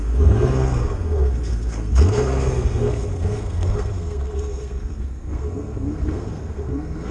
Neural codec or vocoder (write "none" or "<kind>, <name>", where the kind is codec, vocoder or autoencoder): codec, SNAC